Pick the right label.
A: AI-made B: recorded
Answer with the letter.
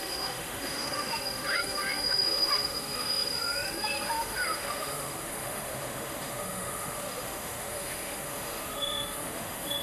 A